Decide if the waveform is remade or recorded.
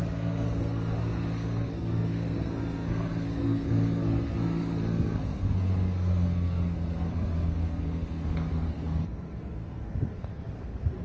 remade